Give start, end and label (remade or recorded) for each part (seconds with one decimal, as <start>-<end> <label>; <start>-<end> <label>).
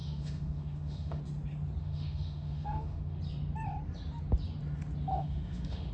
0.0-1.2 remade; 1.2-1.8 recorded; 1.8-3.2 remade; 3.2-5.1 recorded; 5.1-5.9 remade